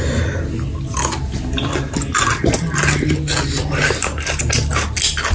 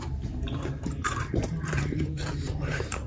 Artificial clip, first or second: second